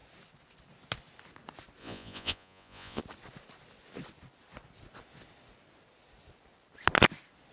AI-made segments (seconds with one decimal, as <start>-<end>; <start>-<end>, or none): 1.8-3.0